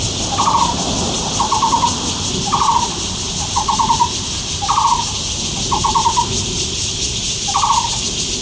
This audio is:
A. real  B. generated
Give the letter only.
A